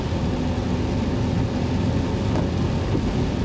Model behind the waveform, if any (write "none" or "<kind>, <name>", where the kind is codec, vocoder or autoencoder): none